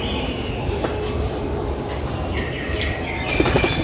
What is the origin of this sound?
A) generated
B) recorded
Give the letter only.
B